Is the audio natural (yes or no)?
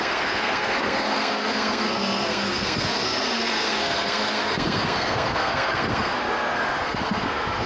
no